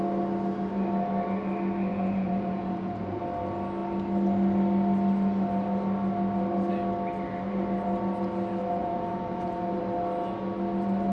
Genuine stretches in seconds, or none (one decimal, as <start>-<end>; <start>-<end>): 0.0-1.9; 3.2-8.8; 9.8-11.1